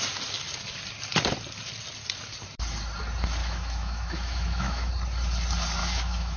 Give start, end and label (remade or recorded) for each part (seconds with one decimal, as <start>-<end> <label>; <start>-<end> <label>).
0.0-3.4 recorded; 3.4-4.9 remade; 4.9-5.8 recorded; 5.8-6.4 remade